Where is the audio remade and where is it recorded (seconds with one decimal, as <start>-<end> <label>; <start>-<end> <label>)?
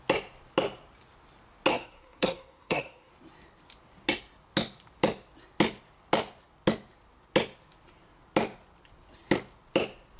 0.0-1.7 recorded; 1.7-3.1 remade; 3.1-10.2 recorded